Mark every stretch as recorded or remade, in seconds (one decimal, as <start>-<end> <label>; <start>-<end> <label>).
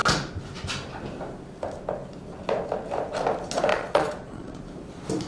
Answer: 0.0-3.7 recorded; 3.7-4.6 remade; 4.6-5.3 recorded